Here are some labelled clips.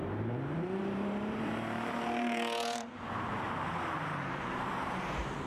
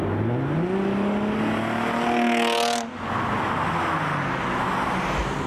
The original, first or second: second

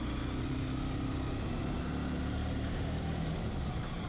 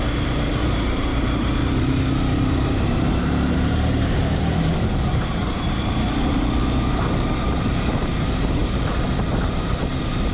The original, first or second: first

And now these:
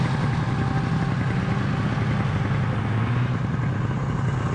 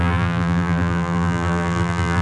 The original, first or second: first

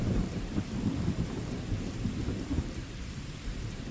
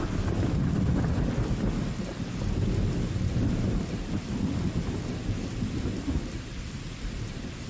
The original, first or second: second